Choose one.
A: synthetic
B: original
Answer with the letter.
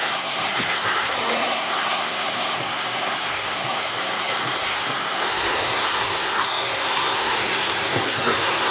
A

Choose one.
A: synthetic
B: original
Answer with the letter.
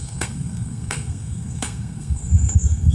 A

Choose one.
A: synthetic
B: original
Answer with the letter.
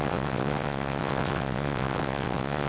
A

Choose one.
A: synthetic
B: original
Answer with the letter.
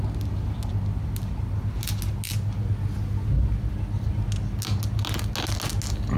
B